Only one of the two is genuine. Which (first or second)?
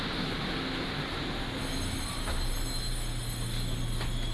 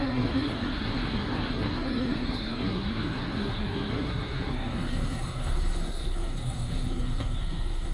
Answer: first